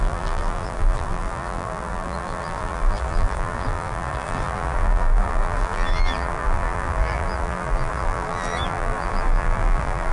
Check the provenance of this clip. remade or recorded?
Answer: remade